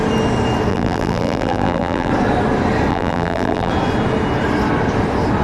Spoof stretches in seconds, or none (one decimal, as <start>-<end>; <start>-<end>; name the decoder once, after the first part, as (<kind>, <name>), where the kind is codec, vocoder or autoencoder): 0.7-2.1 (vocoder, BigVGAN v2); 2.9-3.7